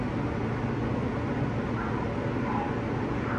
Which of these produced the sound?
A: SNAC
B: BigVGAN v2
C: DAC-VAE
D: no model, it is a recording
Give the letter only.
D